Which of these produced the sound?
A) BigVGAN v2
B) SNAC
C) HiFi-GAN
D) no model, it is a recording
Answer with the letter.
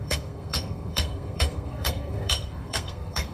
B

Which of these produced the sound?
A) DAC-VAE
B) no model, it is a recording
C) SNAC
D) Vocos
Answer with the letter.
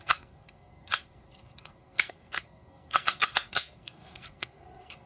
C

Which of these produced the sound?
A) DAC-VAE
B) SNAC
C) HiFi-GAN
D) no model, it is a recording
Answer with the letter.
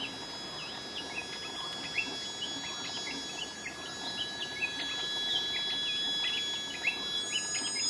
D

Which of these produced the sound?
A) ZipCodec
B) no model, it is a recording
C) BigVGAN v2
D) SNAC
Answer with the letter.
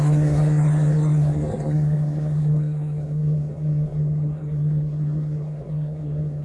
D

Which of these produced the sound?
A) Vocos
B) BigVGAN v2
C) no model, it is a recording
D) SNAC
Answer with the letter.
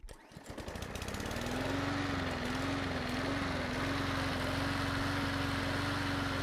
C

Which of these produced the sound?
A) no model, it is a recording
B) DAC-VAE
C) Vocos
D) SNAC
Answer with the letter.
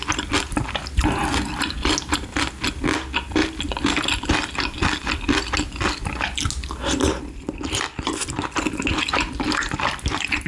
A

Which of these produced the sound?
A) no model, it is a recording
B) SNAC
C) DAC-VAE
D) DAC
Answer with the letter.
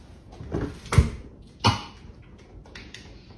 A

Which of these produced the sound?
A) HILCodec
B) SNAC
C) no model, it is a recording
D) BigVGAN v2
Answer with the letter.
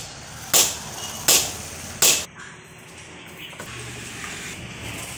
C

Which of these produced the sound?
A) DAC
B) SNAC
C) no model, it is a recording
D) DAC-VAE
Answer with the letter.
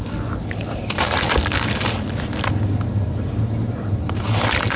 C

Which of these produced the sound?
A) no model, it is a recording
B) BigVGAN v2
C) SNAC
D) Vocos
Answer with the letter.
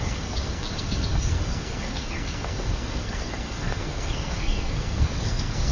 C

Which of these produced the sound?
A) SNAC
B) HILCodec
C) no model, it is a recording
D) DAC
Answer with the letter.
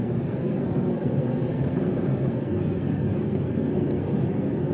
A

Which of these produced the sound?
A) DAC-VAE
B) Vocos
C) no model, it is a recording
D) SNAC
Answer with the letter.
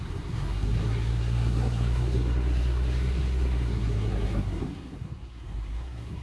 D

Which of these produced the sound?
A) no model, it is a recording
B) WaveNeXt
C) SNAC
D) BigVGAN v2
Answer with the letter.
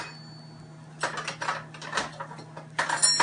A